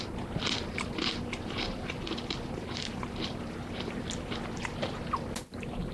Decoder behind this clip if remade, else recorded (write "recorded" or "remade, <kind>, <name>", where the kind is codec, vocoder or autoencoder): remade, vocoder, BigVGAN v2